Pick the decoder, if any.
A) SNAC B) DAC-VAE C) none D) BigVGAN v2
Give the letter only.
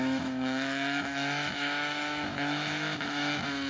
B